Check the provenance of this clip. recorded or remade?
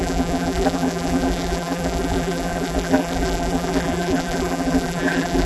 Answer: remade